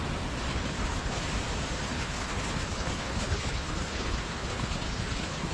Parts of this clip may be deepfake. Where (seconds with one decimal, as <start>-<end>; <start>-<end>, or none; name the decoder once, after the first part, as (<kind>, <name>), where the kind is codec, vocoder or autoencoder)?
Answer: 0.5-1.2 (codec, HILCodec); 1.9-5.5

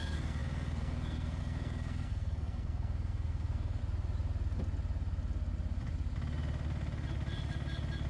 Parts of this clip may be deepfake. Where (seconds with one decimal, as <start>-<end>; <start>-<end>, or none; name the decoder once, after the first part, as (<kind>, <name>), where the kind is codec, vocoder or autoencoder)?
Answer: 0.0-3.8 (codec, SNAC)

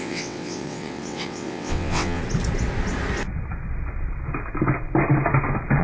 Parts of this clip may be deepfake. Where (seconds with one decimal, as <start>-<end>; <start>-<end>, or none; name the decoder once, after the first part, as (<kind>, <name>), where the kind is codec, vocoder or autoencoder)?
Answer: 0.0-2.2 (vocoder, WaveNeXt)

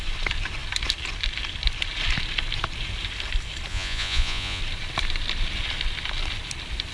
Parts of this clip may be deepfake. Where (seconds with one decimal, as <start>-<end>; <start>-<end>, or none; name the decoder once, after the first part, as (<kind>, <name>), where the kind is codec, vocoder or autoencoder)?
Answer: 3.7-4.6 (vocoder, Vocos)

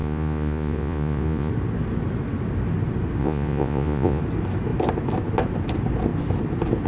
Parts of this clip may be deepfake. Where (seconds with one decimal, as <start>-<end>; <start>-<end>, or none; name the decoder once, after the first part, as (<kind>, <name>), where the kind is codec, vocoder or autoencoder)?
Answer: 0.0-1.5 (vocoder, Vocos); 3.2-4.2

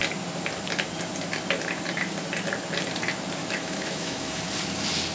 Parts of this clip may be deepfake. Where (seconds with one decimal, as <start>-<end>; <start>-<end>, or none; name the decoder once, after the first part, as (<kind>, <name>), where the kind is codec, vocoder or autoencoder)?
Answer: 3.4-4.4 (autoencoder, DAC-VAE)